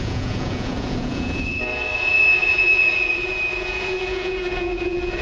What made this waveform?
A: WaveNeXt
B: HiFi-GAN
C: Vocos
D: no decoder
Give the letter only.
C